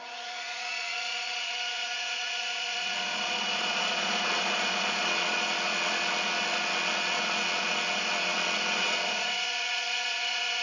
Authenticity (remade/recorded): remade